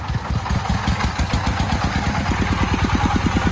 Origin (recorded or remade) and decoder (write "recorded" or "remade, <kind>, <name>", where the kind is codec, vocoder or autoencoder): recorded